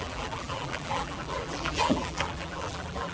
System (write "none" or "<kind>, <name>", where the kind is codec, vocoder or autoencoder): vocoder, BigVGAN v2